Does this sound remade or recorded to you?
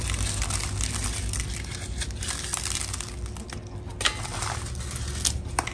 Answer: recorded